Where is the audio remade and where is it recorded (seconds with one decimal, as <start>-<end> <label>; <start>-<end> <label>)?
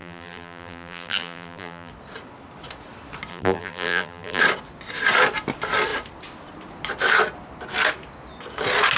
0.0-1.9 remade; 1.9-3.3 recorded; 3.3-4.4 remade; 4.4-9.0 recorded